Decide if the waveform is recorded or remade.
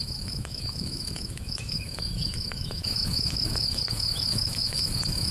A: remade